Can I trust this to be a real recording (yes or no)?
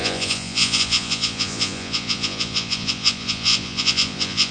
no